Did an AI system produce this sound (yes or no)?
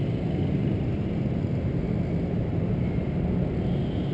no